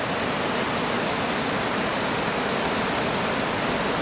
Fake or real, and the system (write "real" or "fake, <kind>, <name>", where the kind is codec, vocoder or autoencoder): real